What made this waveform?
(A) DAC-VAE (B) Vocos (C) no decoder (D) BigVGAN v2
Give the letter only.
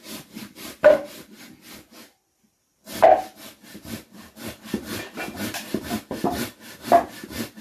D